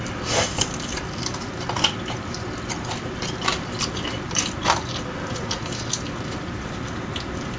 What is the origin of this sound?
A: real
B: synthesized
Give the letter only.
B